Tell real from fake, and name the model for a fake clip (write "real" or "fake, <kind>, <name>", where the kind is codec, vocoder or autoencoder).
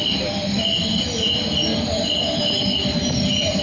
real